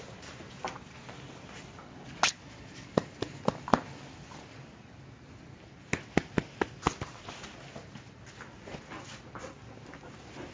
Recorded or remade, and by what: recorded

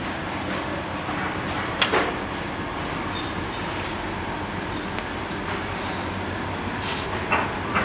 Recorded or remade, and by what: recorded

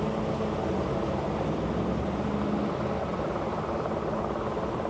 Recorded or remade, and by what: recorded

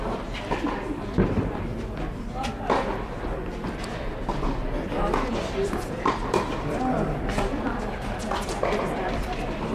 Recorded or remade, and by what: remade, vocoder, BigVGAN v2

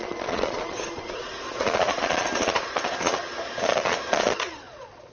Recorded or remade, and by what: remade, vocoder, Vocos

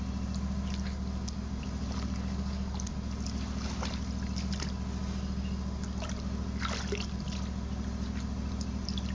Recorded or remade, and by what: recorded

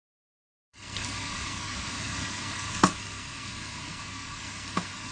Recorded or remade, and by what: remade, codec, SNAC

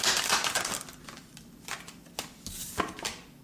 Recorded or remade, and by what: recorded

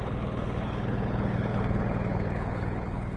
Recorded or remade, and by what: remade, codec, HILCodec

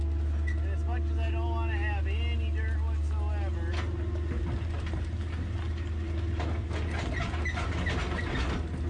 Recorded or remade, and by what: recorded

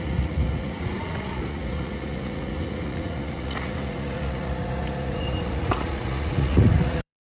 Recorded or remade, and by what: remade, vocoder, Vocos